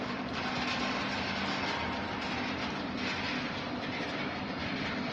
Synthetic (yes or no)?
no